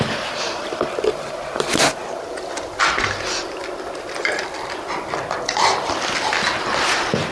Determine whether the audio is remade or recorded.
recorded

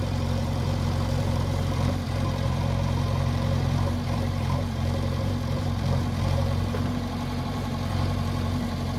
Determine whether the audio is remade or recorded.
remade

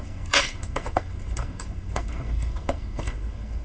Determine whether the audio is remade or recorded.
remade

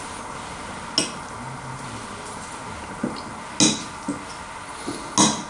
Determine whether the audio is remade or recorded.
recorded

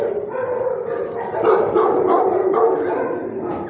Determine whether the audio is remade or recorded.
recorded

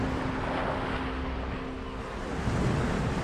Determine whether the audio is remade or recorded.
recorded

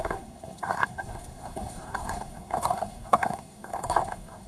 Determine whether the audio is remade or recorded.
remade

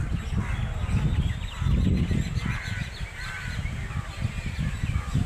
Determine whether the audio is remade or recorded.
recorded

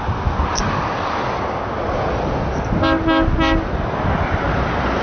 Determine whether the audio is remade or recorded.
recorded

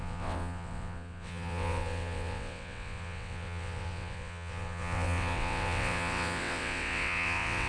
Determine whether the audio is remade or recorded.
remade